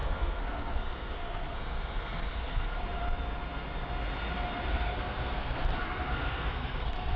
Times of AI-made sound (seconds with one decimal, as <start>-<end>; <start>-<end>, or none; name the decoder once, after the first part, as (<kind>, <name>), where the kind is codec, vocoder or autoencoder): 0.0-2.8 (codec, SNAC); 4.7-7.2